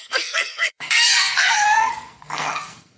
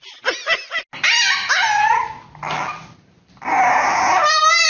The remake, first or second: first